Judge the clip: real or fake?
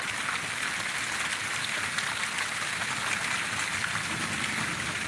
real